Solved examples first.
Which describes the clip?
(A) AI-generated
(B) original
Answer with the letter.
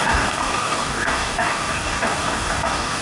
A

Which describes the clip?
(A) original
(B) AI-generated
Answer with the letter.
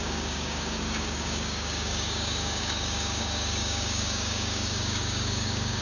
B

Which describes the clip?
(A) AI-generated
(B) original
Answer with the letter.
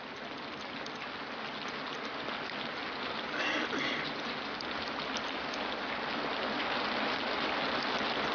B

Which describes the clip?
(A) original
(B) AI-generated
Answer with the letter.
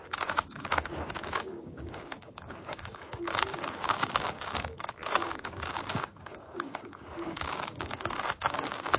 B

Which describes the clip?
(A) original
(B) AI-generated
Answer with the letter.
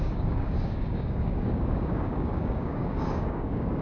B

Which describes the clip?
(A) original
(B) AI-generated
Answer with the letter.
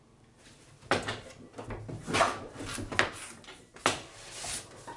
A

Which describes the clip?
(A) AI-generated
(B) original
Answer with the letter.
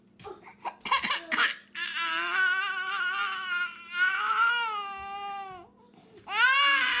B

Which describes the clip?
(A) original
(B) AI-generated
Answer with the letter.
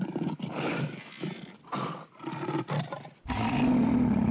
A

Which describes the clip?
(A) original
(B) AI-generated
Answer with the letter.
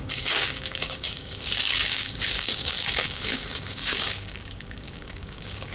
B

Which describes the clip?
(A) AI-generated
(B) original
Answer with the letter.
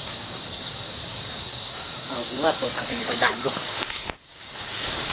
A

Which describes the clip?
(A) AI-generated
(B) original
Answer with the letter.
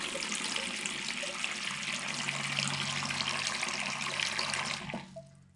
B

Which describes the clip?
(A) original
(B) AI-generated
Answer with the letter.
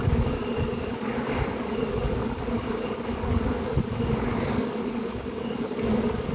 B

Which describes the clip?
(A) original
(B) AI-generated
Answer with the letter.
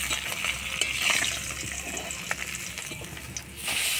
A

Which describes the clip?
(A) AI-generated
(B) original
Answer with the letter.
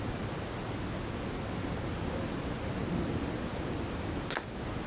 B